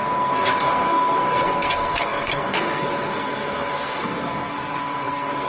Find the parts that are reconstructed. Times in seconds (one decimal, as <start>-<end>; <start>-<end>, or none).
0.0-5.5